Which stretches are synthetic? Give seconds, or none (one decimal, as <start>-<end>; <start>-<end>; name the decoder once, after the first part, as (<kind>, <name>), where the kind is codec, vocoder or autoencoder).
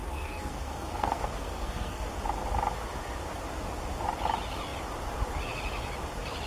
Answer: 0.0-2.1 (codec, SNAC)